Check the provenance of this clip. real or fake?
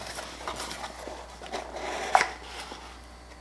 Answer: real